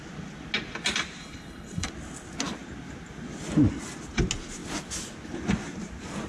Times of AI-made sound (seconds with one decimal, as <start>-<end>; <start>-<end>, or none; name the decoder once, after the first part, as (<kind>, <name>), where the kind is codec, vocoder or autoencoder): 1.2-1.9 (codec, HILCodec)